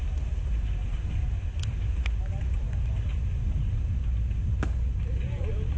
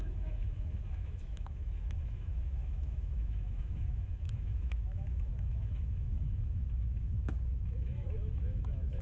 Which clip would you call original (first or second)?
first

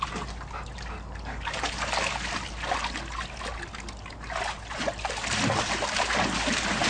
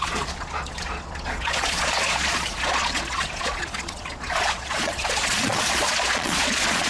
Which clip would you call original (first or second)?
first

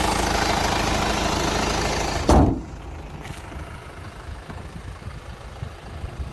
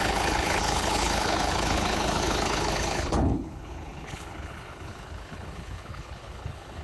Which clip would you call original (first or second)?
first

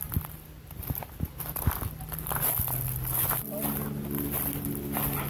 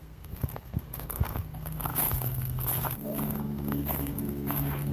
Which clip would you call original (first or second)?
first